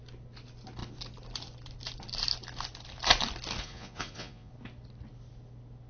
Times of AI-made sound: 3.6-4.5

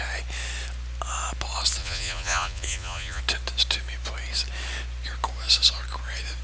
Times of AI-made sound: 1.8-3.2

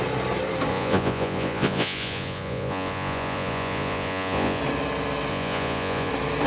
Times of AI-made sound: 0.7-4.6; 5.3-6.1

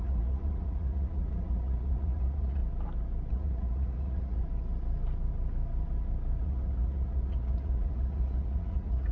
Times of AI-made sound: 0.0-2.6; 3.3-4.4; 6.4-9.1